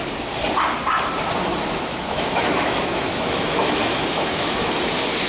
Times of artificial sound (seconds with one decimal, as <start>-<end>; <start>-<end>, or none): 1.5-4.7